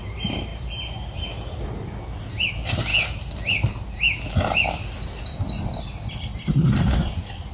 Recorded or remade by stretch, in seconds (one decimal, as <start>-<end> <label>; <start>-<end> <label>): 0.0-0.5 recorded; 0.5-1.2 remade; 1.2-7.5 recorded

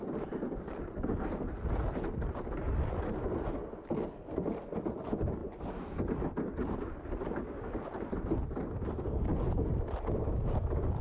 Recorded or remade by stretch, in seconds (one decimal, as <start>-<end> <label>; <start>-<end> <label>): 0.0-11.0 recorded

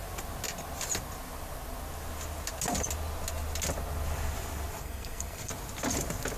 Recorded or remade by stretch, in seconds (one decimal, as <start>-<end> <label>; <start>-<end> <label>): 0.0-4.8 recorded; 4.8-5.5 remade; 5.5-6.4 recorded

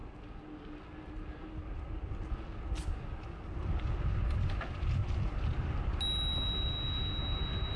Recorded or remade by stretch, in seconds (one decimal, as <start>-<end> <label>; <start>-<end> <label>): 0.0-7.8 recorded

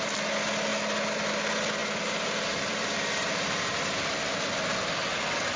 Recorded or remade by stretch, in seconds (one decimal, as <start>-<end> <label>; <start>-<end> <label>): 0.0-1.8 recorded; 1.8-4.4 remade; 4.4-5.6 recorded